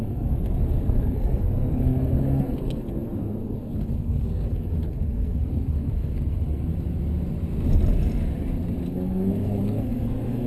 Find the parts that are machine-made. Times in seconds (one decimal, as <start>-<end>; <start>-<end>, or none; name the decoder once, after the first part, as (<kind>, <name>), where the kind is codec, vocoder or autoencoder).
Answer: 0.0-6.7 (codec, SNAC); 8.9-10.5